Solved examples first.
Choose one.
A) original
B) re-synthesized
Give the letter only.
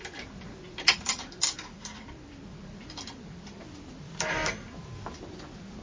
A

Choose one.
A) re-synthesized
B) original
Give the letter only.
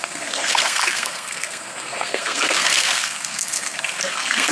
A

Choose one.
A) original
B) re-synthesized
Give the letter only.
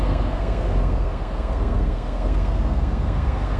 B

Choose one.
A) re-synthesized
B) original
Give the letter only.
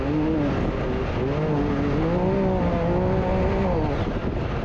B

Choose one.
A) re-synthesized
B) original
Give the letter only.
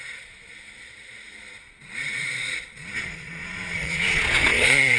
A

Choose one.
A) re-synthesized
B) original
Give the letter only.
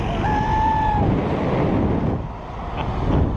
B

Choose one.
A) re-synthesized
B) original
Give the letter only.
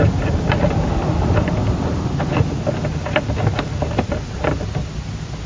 B